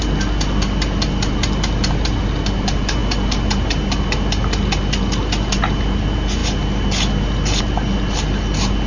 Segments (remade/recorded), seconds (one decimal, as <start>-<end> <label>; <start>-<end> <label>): 0.0-8.9 recorded